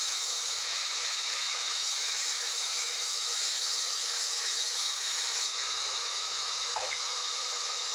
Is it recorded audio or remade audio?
remade